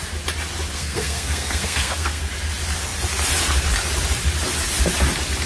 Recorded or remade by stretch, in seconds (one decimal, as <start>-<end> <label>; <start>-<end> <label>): 0.0-0.7 recorded; 0.7-2.2 remade; 2.2-5.5 recorded

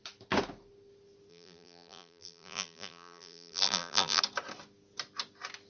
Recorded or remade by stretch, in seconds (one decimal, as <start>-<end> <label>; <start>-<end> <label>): 0.0-1.3 recorded; 1.3-4.2 remade; 4.2-5.7 recorded

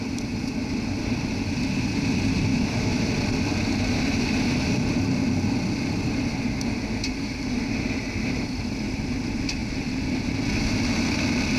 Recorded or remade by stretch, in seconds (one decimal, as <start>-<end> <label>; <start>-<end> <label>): 0.0-2.5 recorded; 2.5-3.0 remade; 3.0-11.6 recorded

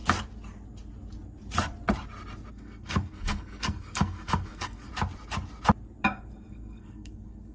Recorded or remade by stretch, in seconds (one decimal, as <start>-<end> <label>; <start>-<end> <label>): 0.0-2.5 recorded; 2.5-4.9 remade; 4.9-6.5 recorded; 6.5-7.5 remade

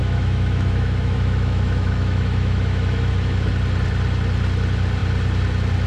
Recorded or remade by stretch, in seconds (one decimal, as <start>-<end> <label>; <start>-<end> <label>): 0.0-3.5 remade; 3.5-5.9 recorded

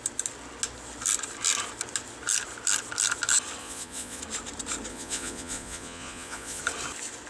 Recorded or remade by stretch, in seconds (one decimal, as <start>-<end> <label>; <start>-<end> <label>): 0.0-3.6 recorded; 3.6-4.2 remade; 4.2-4.9 recorded; 4.9-6.6 remade; 6.6-7.3 recorded

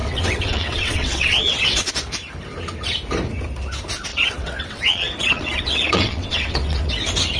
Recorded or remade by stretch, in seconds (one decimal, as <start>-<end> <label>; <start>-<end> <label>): 0.0-1.9 remade; 1.9-4.1 recorded; 4.1-6.9 remade; 6.9-7.4 recorded

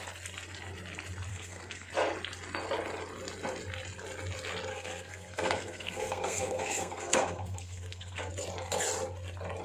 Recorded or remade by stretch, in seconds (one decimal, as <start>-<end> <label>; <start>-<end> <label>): 0.0-1.3 recorded; 1.3-1.9 remade; 1.9-4.7 recorded; 4.7-8.3 remade; 8.3-9.6 recorded